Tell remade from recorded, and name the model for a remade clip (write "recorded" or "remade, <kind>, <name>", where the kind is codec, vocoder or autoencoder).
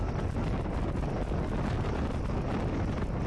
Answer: recorded